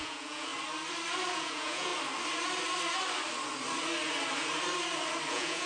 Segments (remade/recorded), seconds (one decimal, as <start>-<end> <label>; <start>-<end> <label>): 0.0-0.5 remade; 0.5-1.4 recorded; 1.4-1.9 remade; 1.9-5.3 recorded; 5.3-5.7 remade